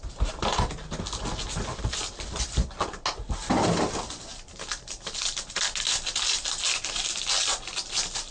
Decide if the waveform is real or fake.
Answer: real